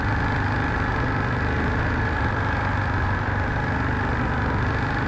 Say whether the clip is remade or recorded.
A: recorded